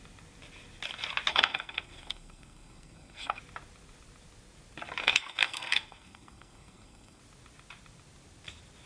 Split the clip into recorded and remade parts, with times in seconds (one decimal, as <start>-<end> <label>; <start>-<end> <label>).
0.0-1.3 recorded; 1.3-3.4 remade; 3.4-5.0 recorded; 5.0-7.2 remade; 7.2-8.9 recorded